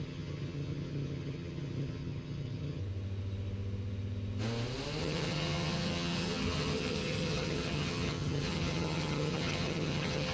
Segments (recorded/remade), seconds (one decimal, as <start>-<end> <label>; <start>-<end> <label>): 0.0-2.8 remade; 2.8-5.0 recorded; 5.0-10.3 remade

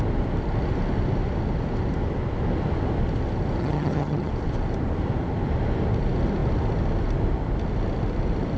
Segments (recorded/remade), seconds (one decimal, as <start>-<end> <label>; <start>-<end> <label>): 0.0-3.6 recorded; 3.6-4.3 remade; 4.3-8.6 recorded

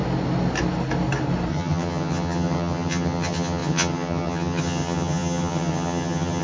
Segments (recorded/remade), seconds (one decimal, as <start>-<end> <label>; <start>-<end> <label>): 0.0-1.5 recorded; 1.5-6.4 remade